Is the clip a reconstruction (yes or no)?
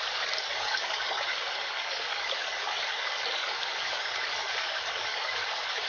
yes